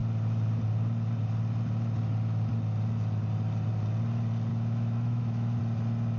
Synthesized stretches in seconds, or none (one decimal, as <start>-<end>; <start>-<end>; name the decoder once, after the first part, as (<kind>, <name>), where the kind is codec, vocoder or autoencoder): 4.5-5.6 (autoencoder, DAC-VAE)

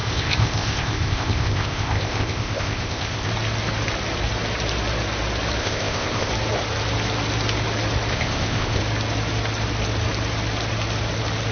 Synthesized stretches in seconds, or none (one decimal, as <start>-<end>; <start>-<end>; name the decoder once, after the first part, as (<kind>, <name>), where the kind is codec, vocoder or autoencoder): 0.0-3.3 (codec, ZipCodec); 5.6-6.3; 8.1-8.8

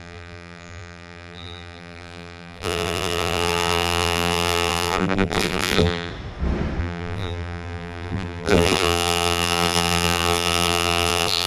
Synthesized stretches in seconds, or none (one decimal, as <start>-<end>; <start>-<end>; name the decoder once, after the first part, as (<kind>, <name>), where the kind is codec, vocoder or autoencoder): 0.0-6.1 (vocoder, BigVGAN v2); 6.8-11.5

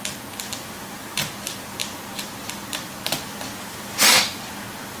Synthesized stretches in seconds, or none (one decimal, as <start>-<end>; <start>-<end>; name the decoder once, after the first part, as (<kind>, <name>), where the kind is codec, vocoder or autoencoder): none